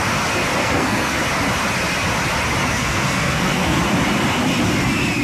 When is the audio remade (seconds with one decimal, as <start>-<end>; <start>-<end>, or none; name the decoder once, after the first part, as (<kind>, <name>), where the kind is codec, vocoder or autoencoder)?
0.6-1.2 (codec, SNAC); 2.6-3.8